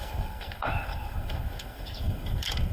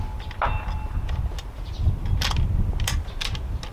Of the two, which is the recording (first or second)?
second